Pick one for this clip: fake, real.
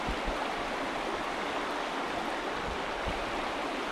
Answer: real